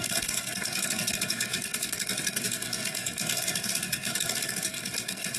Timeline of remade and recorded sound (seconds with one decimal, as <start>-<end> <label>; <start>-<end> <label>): 0.0-5.4 remade